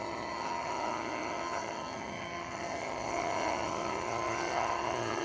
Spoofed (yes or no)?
yes